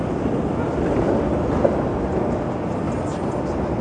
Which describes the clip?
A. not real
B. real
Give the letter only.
B